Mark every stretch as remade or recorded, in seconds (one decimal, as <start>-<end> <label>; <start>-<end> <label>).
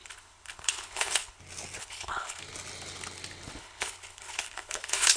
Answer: 0.0-1.4 remade; 1.4-1.8 recorded; 1.8-2.4 remade; 2.4-3.6 recorded; 3.6-5.2 remade